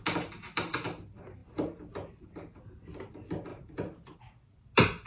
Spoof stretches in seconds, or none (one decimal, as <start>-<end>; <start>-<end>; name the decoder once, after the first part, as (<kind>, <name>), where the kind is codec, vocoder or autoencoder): 1.4-2.6 (vocoder, BigVGAN v2); 3.5-4.2